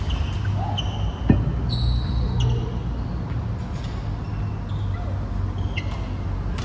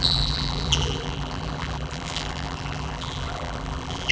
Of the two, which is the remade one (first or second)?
second